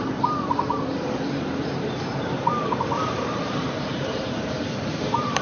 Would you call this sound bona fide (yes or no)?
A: no